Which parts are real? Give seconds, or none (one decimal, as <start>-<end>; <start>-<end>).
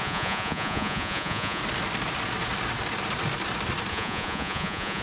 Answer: 1.6-3.9